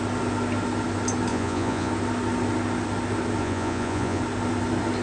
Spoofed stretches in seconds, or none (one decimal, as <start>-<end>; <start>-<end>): 1.3-1.9; 3.4-4.2